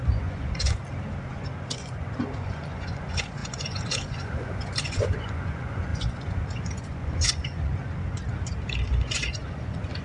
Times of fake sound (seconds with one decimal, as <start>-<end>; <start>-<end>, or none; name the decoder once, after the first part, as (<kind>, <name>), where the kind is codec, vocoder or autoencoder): 0.0-0.8 (vocoder, Vocos); 1.3-7.7; 8.9-10.0